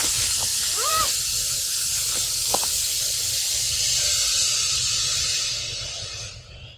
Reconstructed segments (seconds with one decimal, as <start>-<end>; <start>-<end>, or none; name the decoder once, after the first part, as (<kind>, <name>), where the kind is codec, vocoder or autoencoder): 0.5-1.8 (vocoder, BigVGAN v2); 4.4-5.6